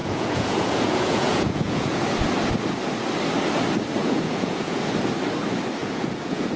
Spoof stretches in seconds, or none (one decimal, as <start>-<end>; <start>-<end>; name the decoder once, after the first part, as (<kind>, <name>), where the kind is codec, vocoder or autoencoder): 0.0-2.0 (vocoder, Vocos); 4.0-4.8; 5.8-6.6